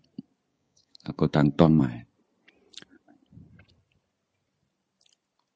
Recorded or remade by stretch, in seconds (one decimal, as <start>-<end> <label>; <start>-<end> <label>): 0.0-0.5 recorded; 0.5-1.8 remade; 1.8-5.6 recorded